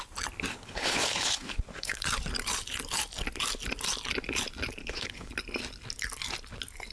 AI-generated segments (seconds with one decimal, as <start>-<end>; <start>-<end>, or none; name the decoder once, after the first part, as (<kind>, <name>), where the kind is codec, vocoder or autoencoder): 0.5-2.0 (codec, HILCodec); 4.8-5.3